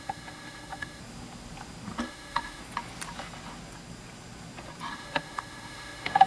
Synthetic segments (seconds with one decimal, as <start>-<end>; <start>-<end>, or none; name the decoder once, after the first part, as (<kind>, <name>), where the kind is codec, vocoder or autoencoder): 0.0-1.0 (autoencoder, DAC-VAE); 2.0-2.6; 4.9-6.3